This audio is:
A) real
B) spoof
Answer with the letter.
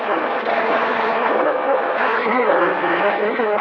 B